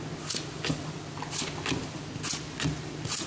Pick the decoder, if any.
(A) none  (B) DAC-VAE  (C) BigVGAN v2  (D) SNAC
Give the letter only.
A